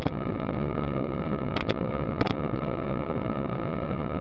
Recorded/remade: remade